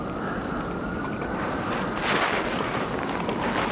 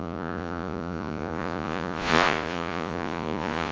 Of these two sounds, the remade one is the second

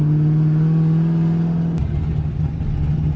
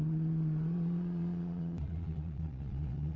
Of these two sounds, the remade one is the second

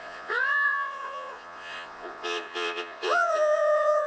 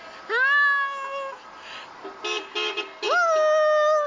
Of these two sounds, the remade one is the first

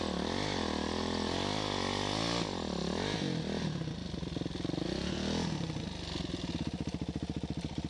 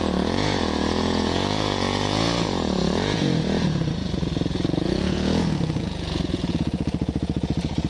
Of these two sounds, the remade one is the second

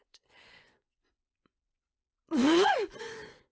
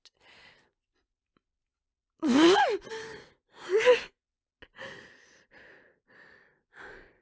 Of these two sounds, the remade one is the first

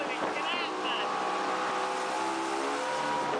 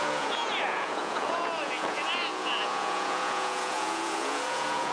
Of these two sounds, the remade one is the second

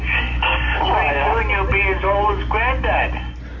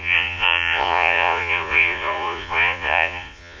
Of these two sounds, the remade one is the second